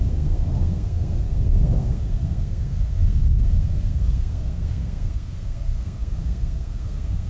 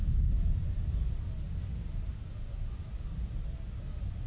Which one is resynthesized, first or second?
first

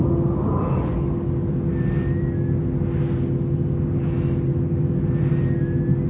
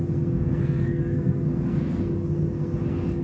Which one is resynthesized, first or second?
second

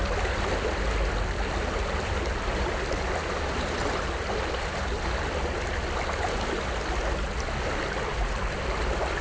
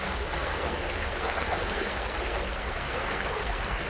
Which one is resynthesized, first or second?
second